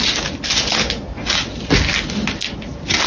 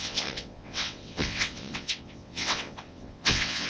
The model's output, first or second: second